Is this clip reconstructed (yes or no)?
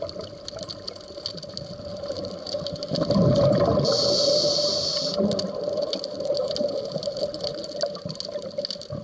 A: no